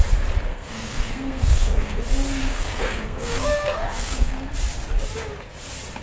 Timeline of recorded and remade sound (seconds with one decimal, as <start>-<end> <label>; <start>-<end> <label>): 0.0-0.5 recorded; 0.5-2.0 remade; 2.0-2.4 recorded; 2.4-4.5 remade; 4.5-6.0 recorded